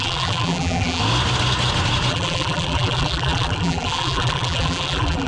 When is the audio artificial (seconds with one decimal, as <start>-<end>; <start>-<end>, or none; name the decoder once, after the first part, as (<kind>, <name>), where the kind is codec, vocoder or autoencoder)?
0.0-1.0 (vocoder, BigVGAN v2); 2.1-5.3

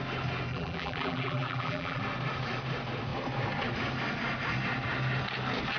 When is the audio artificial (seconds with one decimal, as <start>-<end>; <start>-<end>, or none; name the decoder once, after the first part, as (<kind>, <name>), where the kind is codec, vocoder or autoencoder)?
0.5-2.0 (vocoder, BigVGAN v2)

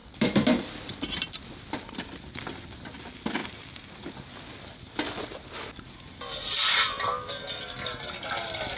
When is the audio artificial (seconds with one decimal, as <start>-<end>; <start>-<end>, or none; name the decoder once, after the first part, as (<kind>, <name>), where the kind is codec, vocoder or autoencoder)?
0.0-2.6 (vocoder, BigVGAN v2)

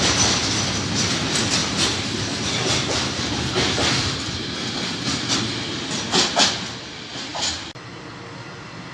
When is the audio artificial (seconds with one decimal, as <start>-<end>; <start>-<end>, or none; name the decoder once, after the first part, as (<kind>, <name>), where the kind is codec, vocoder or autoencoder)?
1.6-5.4 (vocoder, BigVGAN v2); 7.3-8.1

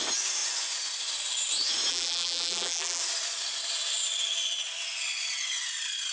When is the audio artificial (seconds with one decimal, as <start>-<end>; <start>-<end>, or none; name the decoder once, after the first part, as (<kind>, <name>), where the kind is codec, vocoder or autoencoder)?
1.9-3.0 (vocoder, BigVGAN v2)

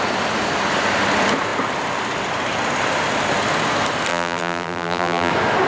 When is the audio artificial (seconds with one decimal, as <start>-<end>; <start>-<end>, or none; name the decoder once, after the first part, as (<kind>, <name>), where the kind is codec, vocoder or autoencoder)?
4.1-5.3 (vocoder, BigVGAN v2)

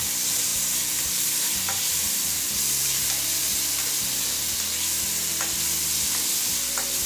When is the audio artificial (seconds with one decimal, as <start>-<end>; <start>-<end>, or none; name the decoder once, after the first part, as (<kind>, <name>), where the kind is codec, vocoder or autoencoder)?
0.5-2.7 (vocoder, BigVGAN v2)